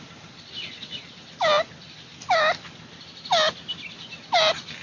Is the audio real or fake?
real